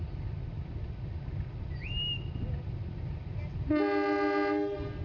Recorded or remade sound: recorded